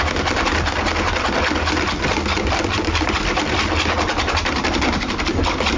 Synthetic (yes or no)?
no